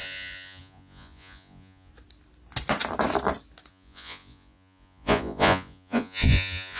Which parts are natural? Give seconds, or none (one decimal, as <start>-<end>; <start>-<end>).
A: 1.9-3.7